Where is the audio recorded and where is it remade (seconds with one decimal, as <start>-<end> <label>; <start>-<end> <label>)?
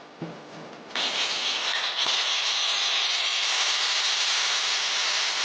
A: 0.0-5.4 recorded